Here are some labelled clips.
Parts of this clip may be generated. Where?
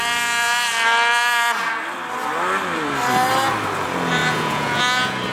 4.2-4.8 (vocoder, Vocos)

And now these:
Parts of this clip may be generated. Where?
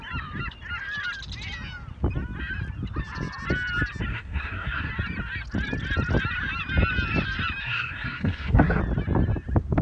4.1-4.9 (codec, SNAC); 7.6-8.8